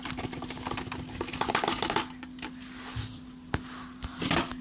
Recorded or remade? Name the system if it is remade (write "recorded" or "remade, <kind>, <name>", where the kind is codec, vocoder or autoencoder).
recorded